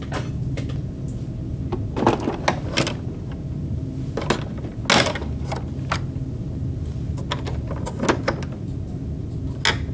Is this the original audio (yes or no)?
yes